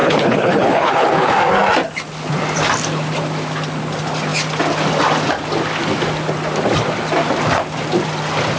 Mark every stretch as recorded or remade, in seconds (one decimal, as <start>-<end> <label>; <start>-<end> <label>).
0.0-1.3 remade; 1.3-8.6 recorded